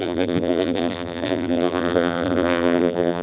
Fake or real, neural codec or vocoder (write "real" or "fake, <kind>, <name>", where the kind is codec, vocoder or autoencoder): fake, vocoder, BigVGAN v2